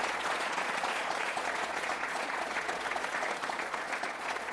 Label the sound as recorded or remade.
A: remade